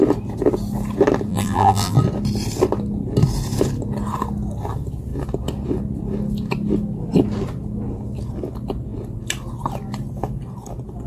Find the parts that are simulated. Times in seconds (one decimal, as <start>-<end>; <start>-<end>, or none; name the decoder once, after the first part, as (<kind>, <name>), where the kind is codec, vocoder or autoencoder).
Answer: 1.3-2.0 (vocoder, BigVGAN v2)